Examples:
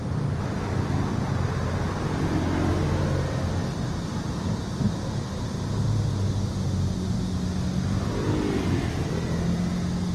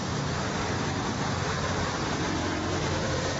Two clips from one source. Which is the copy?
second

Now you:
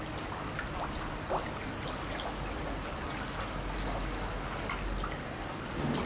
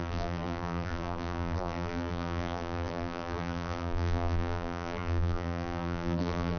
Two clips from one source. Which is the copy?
second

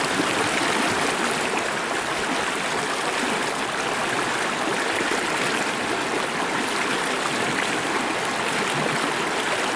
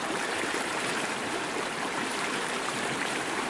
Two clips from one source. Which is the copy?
second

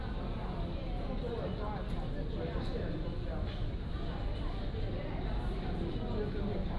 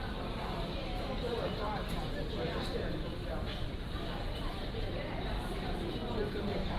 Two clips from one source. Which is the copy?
second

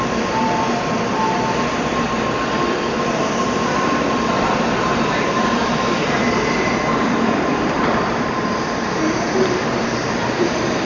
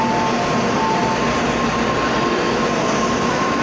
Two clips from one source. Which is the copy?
first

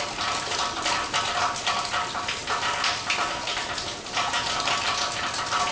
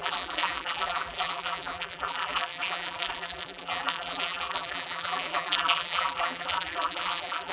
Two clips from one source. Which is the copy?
second